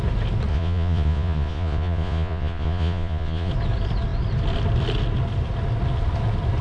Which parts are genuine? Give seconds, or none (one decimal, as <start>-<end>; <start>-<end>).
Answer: 0.0-0.5; 3.5-6.6